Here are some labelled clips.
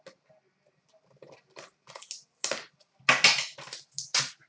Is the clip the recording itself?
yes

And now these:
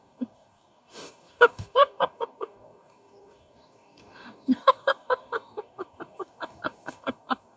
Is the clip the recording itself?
no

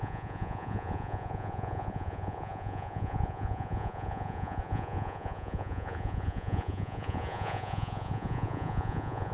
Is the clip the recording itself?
no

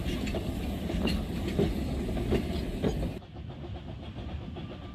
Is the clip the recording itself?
yes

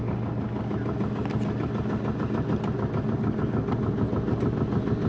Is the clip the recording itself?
yes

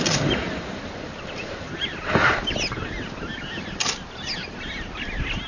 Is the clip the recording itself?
yes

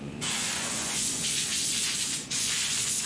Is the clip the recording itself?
no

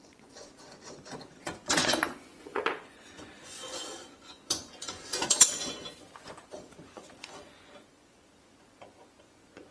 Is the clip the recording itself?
no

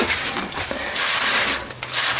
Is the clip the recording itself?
no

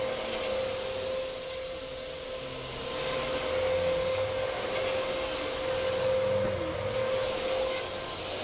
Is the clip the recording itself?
yes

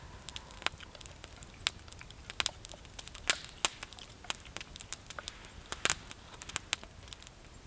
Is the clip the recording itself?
yes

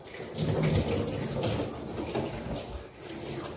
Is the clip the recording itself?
yes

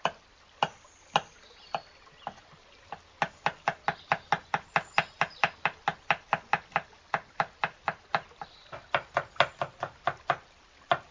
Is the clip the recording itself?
yes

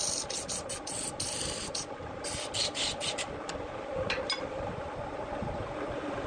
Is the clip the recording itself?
no